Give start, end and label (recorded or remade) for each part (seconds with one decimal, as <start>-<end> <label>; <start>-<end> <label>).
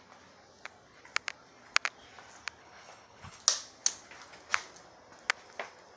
0.0-2.6 recorded; 2.6-3.4 remade; 3.4-6.0 recorded